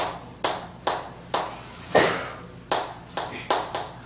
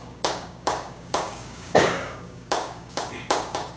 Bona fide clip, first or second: first